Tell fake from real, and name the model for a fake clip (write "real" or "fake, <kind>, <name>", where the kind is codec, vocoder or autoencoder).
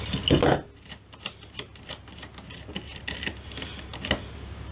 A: real